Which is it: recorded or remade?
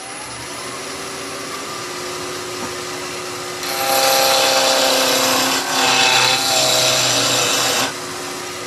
recorded